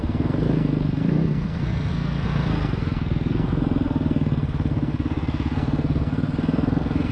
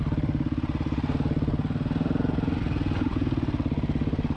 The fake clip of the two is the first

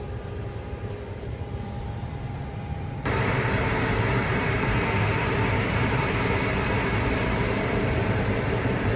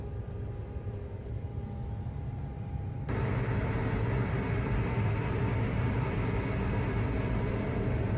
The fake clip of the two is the first